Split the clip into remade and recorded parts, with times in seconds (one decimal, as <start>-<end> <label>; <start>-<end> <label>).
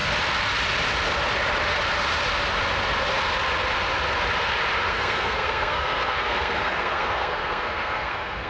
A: 0.0-4.9 recorded; 4.9-8.5 remade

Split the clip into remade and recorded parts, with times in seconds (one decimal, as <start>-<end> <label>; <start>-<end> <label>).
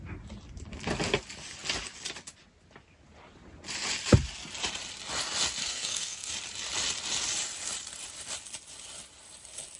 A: 0.0-5.6 recorded; 5.6-6.3 remade; 6.3-9.8 recorded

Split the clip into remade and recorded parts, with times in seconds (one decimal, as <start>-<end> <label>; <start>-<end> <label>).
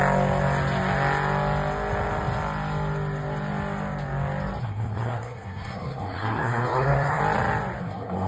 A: 0.0-4.6 recorded; 4.6-7.2 remade; 7.2-7.8 recorded; 7.8-8.3 remade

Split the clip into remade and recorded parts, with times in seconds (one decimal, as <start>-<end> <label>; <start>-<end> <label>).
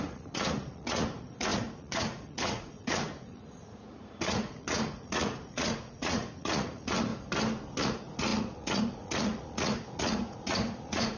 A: 0.0-7.1 remade; 7.1-7.8 recorded; 7.8-11.2 remade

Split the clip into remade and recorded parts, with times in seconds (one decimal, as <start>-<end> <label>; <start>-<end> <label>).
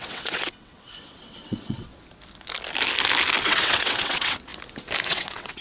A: 0.0-1.9 remade; 1.9-3.4 recorded; 3.4-4.5 remade; 4.5-5.1 recorded; 5.1-5.6 remade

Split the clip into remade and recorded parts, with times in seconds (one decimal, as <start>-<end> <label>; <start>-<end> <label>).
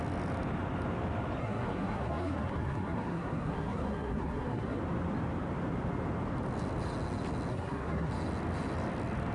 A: 0.0-1.4 recorded; 1.4-4.8 remade; 4.8-7.5 recorded; 7.5-8.1 remade; 8.1-9.3 recorded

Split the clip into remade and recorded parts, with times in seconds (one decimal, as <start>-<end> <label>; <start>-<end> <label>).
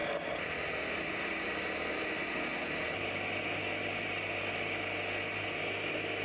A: 0.0-2.5 recorded; 2.5-3.4 remade; 3.4-6.2 recorded